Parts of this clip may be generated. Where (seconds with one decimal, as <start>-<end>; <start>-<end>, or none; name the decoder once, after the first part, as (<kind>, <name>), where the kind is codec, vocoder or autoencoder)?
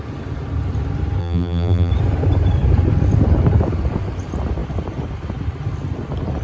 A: 1.2-1.9 (vocoder, BigVGAN v2)